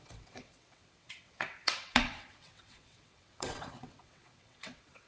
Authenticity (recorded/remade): remade